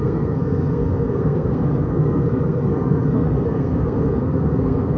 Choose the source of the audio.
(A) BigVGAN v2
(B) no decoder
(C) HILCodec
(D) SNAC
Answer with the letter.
D